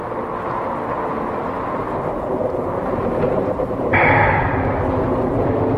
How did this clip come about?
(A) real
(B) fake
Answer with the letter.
A